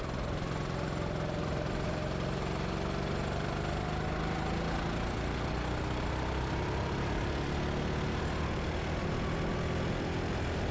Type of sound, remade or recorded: recorded